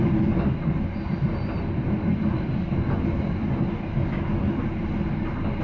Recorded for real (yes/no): yes